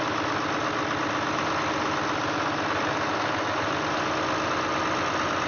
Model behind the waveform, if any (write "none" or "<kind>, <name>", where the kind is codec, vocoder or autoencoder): none